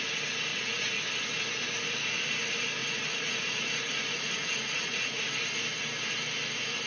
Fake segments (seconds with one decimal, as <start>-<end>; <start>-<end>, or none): 0.5-1.1; 2.8-5.3